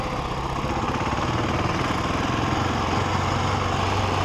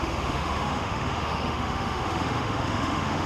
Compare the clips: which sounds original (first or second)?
first